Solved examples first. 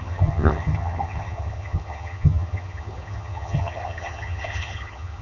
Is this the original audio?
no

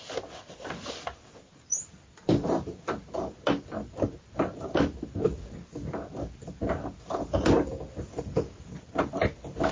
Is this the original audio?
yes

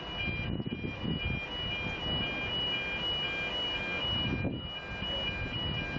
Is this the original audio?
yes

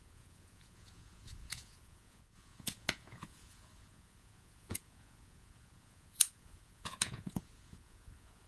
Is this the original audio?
no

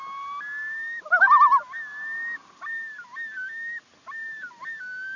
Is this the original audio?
yes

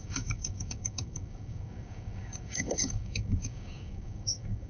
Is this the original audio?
no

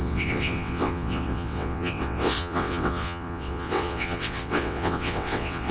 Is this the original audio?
no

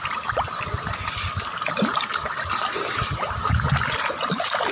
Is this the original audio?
no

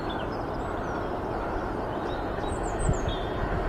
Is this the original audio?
yes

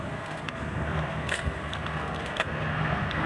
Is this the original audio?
no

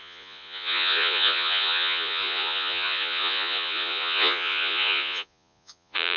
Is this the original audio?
no